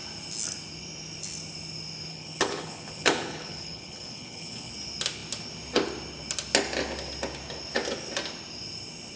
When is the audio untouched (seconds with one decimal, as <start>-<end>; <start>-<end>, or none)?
0.0-2.1; 4.7-9.2